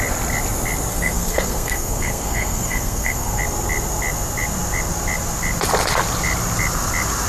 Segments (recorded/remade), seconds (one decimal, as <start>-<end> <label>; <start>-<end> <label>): 0.0-0.9 recorded; 0.9-3.4 remade; 3.4-7.3 recorded